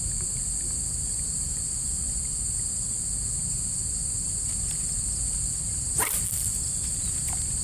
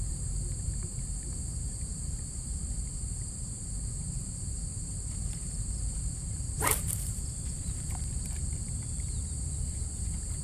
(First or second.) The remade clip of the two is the second